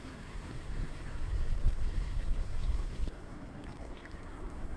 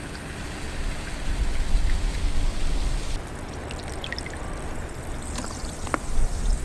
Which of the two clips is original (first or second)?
second